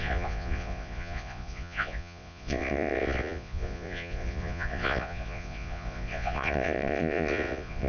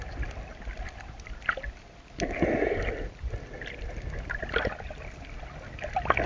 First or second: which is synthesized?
first